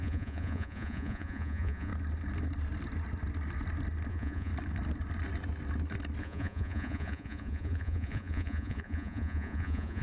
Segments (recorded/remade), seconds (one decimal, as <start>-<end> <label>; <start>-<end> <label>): 0.0-1.9 remade; 1.9-4.1 recorded; 4.1-4.5 remade; 4.5-6.2 recorded; 6.2-10.0 remade